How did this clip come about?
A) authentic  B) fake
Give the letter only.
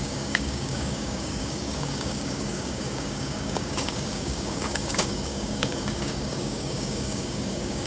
B